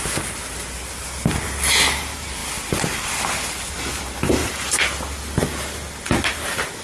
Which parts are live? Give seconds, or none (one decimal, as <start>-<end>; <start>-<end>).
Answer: 0.0-6.8